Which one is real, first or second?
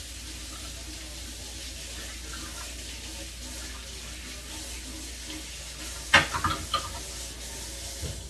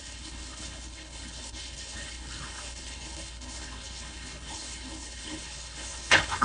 first